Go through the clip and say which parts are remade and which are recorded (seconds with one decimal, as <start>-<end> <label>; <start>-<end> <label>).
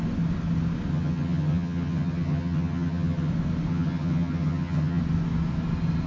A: 0.0-0.9 recorded; 0.9-3.3 remade; 3.3-3.7 recorded; 3.7-5.0 remade; 5.0-6.1 recorded